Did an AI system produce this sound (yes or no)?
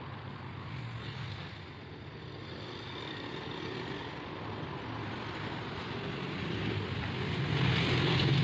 no